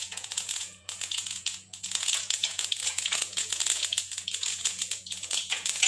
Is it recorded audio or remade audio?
remade